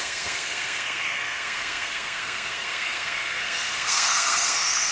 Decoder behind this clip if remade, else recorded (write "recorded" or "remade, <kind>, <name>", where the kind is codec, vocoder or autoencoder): remade, codec, SNAC